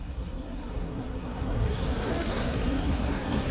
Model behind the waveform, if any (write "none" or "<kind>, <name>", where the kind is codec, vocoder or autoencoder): codec, SNAC